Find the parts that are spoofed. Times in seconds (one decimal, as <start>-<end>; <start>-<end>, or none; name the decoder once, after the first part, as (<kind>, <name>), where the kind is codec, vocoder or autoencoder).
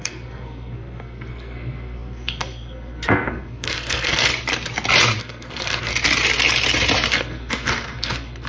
0.0-4.3 (codec, SNAC); 5.2-5.9; 7.1-8.5